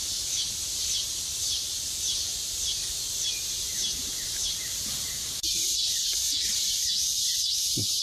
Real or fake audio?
fake